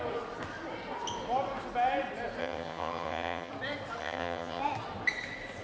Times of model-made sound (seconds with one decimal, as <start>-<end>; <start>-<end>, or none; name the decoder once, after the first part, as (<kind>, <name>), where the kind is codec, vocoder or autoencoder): 2.4-3.5 (vocoder, HiFi-GAN); 4.0-4.6